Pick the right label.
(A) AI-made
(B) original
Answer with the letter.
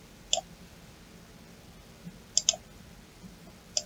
B